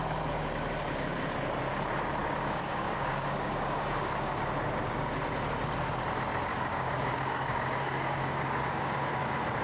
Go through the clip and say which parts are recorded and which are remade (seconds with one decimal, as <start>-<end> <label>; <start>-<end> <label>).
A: 0.0-2.2 recorded; 2.2-4.3 remade; 4.3-6.5 recorded; 6.5-9.1 remade; 9.1-9.6 recorded